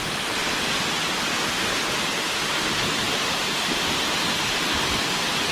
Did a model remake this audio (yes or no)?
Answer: no